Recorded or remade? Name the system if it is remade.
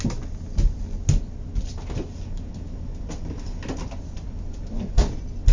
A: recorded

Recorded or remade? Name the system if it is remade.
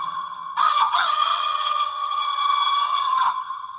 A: remade, vocoder, HiFi-GAN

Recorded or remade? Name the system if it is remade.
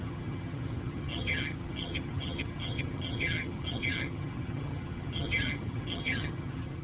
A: remade, vocoder, HiFi-GAN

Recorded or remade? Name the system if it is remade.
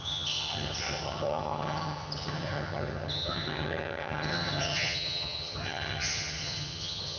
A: remade, vocoder, HiFi-GAN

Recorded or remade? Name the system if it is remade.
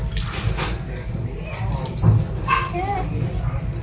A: recorded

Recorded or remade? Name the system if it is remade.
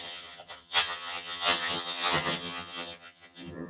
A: remade, vocoder, HiFi-GAN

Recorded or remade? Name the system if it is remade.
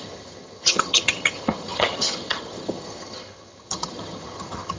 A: remade, vocoder, HiFi-GAN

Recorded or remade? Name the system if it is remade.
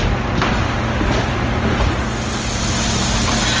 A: recorded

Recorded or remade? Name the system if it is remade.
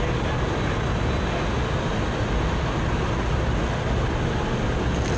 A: recorded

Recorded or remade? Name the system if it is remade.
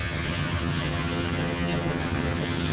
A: remade, vocoder, HiFi-GAN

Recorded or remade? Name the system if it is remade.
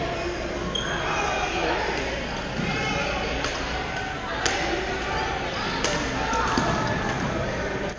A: recorded